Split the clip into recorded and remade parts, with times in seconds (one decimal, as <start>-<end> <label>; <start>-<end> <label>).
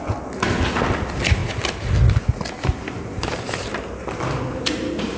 0.0-5.2 recorded